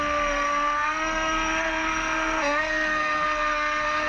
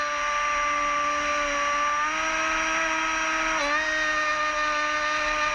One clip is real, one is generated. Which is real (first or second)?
second